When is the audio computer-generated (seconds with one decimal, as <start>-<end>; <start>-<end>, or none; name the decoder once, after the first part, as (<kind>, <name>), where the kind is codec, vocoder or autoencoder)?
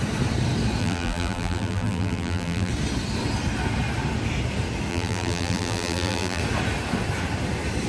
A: 0.8-2.7 (vocoder, BigVGAN v2); 4.9-6.4